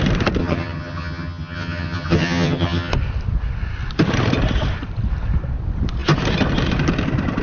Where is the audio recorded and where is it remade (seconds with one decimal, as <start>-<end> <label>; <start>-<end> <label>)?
0.0-0.4 recorded; 0.4-2.9 remade; 2.9-7.4 recorded